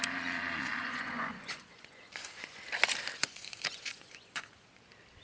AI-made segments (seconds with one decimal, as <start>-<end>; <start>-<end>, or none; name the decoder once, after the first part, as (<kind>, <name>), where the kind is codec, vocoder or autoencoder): 0.8-2.6 (vocoder, Vocos); 3.2-4.7